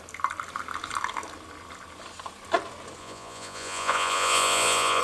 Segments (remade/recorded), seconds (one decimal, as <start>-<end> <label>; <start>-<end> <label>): 0.0-3.0 recorded; 3.0-5.0 remade